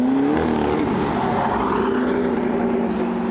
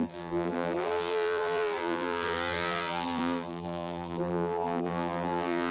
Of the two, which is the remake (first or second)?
second